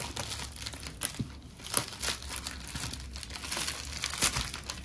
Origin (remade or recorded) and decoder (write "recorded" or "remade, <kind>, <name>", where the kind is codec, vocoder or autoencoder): recorded